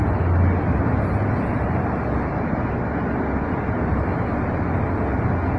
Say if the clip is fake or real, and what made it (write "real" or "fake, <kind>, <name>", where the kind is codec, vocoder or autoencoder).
real